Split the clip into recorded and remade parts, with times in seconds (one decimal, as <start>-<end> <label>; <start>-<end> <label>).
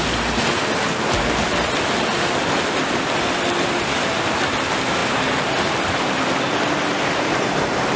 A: 0.0-8.0 recorded